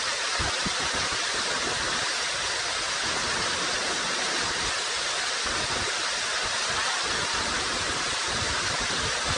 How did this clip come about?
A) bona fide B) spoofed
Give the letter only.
A